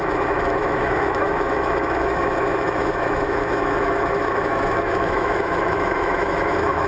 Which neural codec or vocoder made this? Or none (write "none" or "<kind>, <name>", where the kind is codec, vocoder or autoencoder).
autoencoder, DAC-VAE